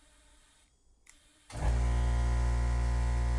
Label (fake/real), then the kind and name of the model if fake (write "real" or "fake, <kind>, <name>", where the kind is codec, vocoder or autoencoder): fake, vocoder, BigVGAN v2